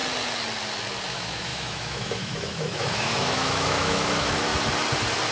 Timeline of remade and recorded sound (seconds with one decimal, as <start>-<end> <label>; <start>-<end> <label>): 0.0-1.1 recorded; 1.1-4.5 remade; 4.5-5.3 recorded